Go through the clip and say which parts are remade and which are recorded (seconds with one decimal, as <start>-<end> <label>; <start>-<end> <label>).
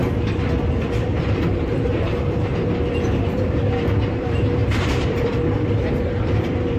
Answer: 0.0-1.2 recorded; 1.2-2.5 remade; 2.5-3.0 recorded; 3.0-6.8 remade